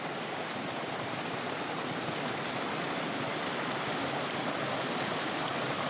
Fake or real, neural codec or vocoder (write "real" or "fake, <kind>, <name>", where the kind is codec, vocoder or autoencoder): real